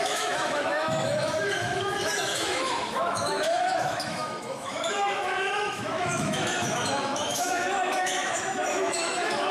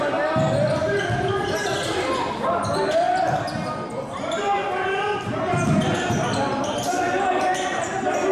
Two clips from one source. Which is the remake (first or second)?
first